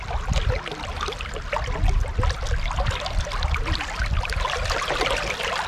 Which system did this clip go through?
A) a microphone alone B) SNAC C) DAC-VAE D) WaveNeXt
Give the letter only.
A